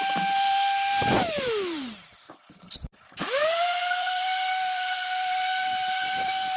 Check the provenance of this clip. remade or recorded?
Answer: remade